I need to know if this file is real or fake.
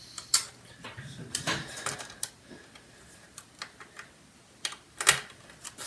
real